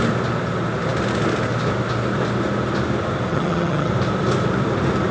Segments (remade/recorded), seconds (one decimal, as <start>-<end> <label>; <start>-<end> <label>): 0.0-3.3 recorded; 3.3-3.9 remade; 3.9-5.1 recorded